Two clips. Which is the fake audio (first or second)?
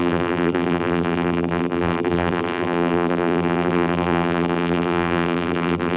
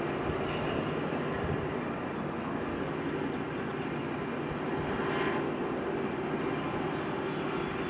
first